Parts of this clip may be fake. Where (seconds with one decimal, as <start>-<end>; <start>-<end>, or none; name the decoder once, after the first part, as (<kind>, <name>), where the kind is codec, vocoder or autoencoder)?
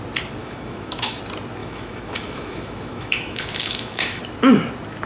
0.4-1.2 (autoencoder, DAC-VAE); 1.6-4.2